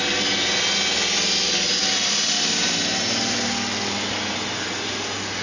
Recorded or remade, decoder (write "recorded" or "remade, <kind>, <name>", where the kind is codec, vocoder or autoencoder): recorded